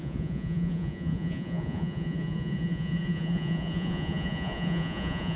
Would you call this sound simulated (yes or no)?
yes